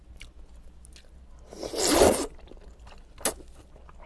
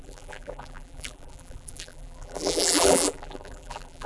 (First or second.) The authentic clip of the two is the first